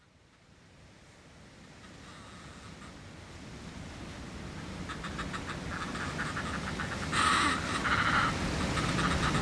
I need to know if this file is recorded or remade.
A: recorded